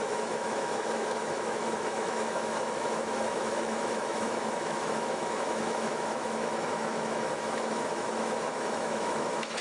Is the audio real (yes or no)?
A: no